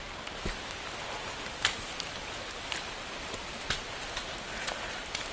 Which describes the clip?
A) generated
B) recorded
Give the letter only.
B